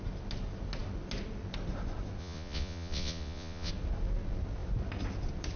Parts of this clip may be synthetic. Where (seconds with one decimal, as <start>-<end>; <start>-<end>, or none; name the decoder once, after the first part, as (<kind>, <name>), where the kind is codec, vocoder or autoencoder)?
2.2-3.7 (vocoder, Vocos)